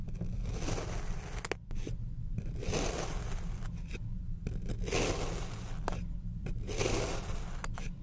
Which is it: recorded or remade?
recorded